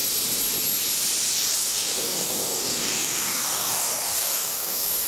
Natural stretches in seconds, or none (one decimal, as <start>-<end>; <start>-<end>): 0.0-1.7